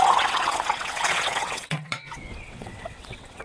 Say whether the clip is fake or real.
fake